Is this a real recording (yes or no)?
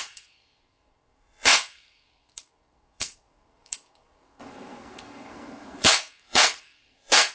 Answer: no